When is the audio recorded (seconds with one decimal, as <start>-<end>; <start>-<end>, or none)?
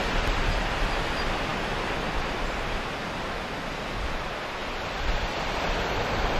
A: 0.0-6.4